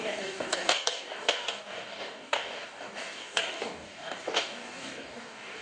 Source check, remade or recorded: remade